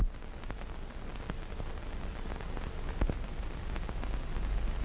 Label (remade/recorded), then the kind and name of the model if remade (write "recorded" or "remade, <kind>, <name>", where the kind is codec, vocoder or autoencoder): recorded